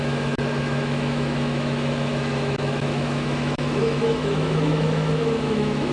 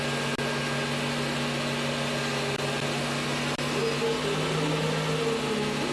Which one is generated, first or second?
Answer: first